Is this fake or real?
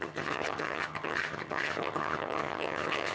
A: fake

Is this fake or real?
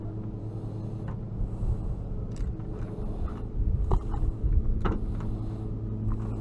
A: real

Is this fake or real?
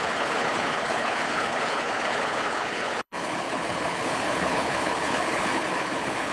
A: fake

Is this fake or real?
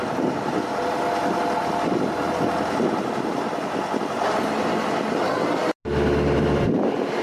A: real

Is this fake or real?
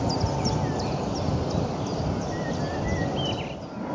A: real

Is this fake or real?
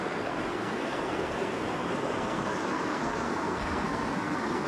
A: fake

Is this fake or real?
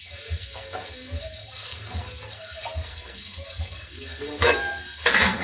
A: fake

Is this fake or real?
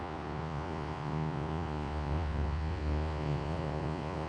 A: fake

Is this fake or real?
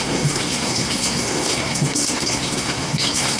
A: fake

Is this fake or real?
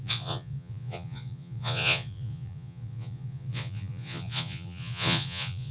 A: fake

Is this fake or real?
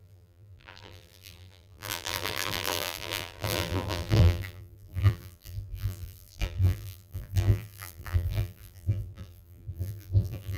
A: fake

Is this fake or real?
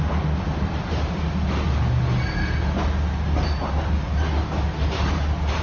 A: real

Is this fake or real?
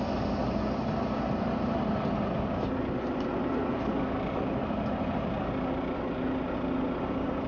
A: real